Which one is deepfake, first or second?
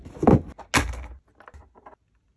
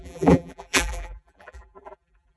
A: second